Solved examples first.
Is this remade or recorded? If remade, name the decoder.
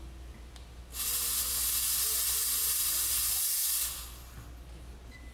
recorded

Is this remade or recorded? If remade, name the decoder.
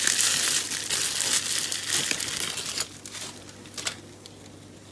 recorded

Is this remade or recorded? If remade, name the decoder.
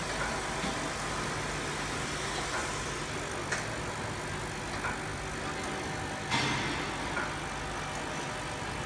recorded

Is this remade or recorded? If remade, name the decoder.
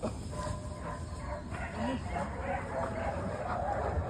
recorded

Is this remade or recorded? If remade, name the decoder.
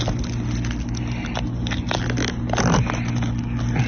recorded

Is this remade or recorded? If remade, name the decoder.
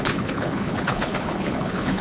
remade, codec, HILCodec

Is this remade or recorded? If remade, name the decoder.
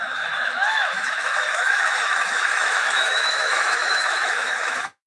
remade, autoencoder, DAC-VAE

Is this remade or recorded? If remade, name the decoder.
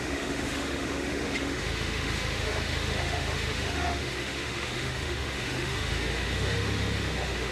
remade, autoencoder, DAC-VAE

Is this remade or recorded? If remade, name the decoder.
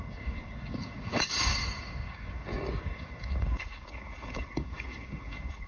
remade, codec, DAC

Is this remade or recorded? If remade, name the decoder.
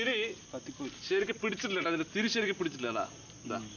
recorded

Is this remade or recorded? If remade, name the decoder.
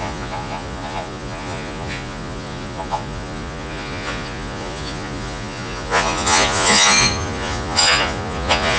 remade, vocoder, Vocos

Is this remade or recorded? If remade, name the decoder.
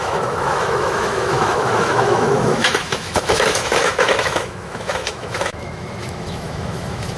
remade, autoencoder, DAC-VAE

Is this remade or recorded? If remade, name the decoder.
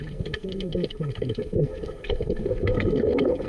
remade, codec, SNAC